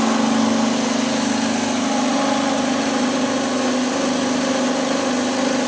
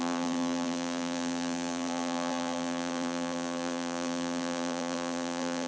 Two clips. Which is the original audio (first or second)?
first